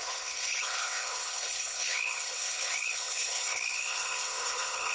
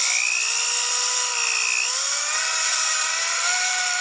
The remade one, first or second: first